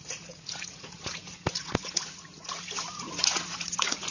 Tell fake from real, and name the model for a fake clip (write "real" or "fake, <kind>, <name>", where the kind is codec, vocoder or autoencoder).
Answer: fake, vocoder, Vocos